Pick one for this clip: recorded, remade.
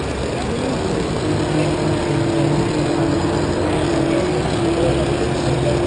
recorded